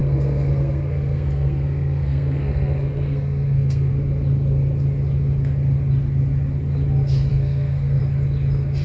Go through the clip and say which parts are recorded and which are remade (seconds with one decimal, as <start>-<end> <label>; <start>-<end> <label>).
0.0-3.9 remade; 3.9-7.3 recorded; 7.3-8.0 remade; 8.0-8.8 recorded